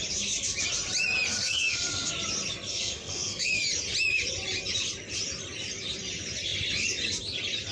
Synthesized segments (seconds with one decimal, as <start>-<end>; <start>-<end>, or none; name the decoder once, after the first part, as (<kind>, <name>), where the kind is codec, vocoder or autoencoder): 1.3-2.1 (codec, SNAC); 2.7-3.6